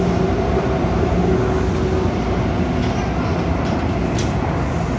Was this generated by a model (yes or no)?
no